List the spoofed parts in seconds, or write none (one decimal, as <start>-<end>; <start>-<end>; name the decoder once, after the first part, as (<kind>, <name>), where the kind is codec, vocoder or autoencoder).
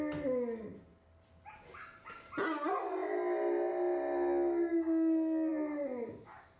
none